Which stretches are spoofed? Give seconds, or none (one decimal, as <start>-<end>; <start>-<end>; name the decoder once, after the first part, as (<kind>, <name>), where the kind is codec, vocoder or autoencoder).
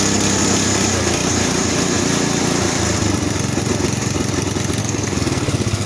4.8-5.9 (codec, SNAC)